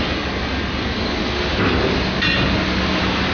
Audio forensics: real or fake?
real